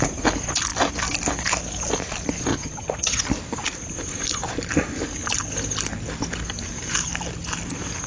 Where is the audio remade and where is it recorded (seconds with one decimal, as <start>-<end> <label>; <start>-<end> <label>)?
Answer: 0.0-2.5 recorded; 2.5-3.2 remade; 3.2-8.1 recorded